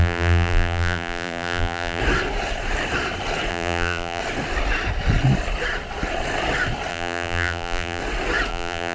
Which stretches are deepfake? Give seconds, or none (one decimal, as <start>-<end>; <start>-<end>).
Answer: 0.0-2.0; 3.5-4.2; 6.9-8.0; 8.5-8.9